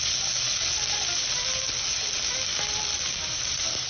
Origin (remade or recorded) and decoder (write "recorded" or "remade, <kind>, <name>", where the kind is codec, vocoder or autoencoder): recorded